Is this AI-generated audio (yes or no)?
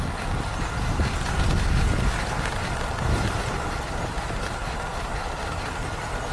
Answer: no